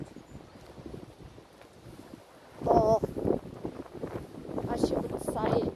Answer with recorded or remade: recorded